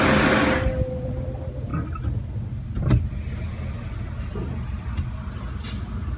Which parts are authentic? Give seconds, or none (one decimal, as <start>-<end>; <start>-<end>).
0.0-6.2